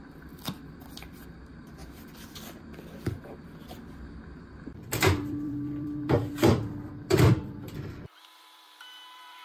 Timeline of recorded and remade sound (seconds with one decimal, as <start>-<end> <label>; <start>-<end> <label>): 0.0-9.4 remade